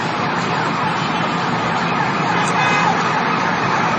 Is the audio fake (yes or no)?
no